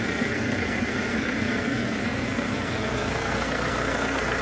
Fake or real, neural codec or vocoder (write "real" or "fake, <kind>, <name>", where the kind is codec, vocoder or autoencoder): fake, codec, SNAC